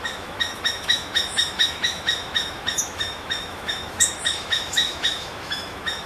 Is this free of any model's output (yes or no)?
no